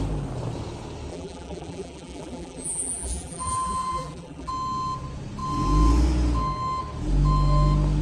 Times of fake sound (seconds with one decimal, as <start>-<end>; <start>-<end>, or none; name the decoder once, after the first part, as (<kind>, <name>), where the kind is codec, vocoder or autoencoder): 1.1-4.5 (vocoder, BigVGAN v2)